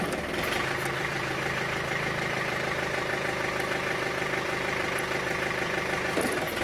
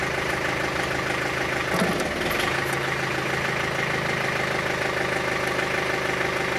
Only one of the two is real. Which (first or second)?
second